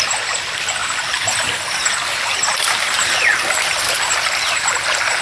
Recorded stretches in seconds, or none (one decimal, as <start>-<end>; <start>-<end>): 0.0-5.2